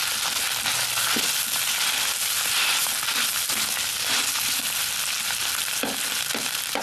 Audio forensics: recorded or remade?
recorded